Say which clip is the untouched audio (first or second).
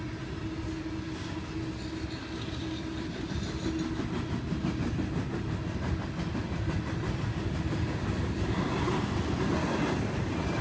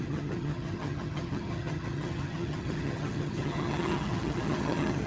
first